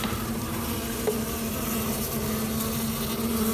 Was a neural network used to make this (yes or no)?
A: no